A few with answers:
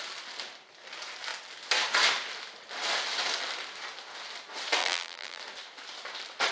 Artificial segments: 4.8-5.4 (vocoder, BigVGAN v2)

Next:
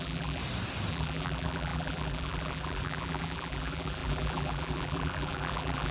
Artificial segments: 0.0-0.4 (vocoder, BigVGAN v2); 0.9-5.9